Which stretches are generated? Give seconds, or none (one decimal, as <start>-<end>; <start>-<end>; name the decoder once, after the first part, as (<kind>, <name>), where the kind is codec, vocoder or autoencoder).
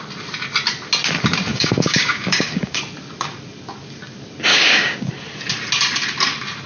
1.5-2.8 (codec, DAC); 4.5-5.1